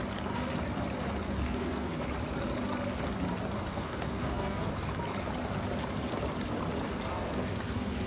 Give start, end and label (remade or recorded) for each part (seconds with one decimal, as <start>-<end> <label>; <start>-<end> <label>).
0.0-1.4 recorded; 1.4-2.1 remade; 2.1-3.7 recorded; 3.7-4.7 remade; 4.7-7.1 recorded; 7.1-8.1 remade